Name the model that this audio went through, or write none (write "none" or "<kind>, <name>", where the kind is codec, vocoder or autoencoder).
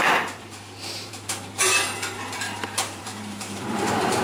vocoder, BigVGAN v2